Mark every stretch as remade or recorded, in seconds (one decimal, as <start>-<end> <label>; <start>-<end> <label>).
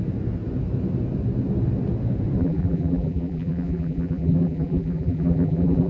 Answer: 0.0-2.4 recorded; 2.4-5.9 remade